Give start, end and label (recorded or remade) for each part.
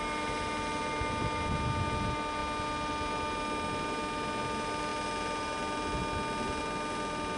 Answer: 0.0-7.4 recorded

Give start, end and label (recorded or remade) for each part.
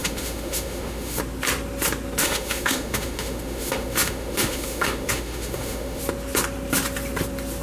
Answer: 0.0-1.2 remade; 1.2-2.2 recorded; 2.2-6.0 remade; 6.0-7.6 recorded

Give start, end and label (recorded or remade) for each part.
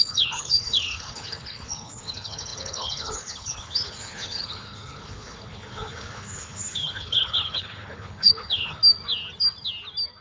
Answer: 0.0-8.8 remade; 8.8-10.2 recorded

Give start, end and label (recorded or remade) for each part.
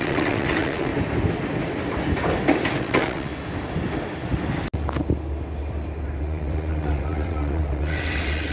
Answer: 0.0-0.9 remade; 0.9-2.7 recorded; 2.7-3.3 remade; 3.3-6.2 recorded; 6.2-8.5 remade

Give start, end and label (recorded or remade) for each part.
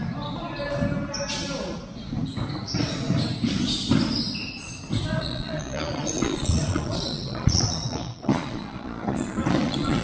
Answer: 0.0-5.2 recorded; 5.2-10.0 remade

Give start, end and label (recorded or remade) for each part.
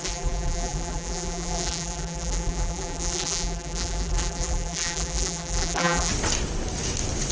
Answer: 0.0-6.1 remade; 6.1-7.3 recorded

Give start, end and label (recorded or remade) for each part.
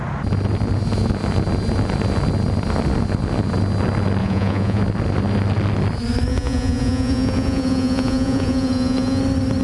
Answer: 0.0-4.2 recorded; 4.2-4.8 remade; 4.8-6.3 recorded; 6.3-9.2 remade; 9.2-9.6 recorded